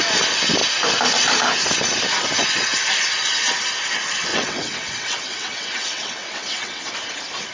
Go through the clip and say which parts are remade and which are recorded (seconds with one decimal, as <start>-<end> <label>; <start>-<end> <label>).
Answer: 0.0-4.3 recorded; 4.3-6.9 remade; 6.9-7.5 recorded